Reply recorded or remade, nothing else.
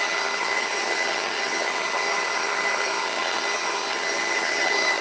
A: remade